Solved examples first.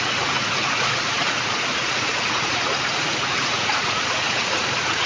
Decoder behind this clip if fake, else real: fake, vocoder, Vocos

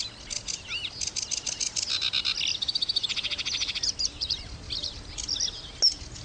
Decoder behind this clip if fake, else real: real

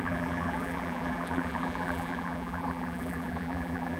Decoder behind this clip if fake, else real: fake, vocoder, BigVGAN v2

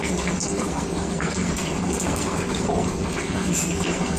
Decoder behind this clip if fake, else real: fake, codec, SNAC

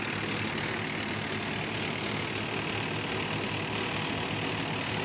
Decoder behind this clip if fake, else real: real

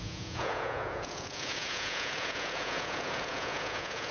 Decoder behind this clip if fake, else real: fake, vocoder, Vocos